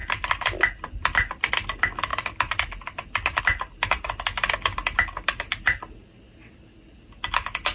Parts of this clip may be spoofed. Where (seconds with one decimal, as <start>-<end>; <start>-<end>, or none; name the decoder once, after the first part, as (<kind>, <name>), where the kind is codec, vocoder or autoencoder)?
0.0-1.5 (vocoder, BigVGAN v2); 2.1-3.4